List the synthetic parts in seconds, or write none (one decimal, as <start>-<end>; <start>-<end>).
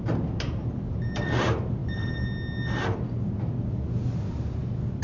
none